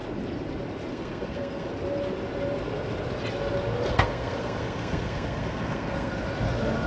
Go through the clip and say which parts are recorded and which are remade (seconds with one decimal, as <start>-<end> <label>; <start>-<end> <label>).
0.0-0.9 recorded; 0.9-1.7 remade; 1.7-3.9 recorded; 3.9-6.1 remade; 6.1-6.9 recorded